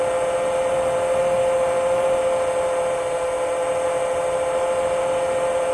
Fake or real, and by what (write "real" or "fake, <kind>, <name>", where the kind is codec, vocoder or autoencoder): real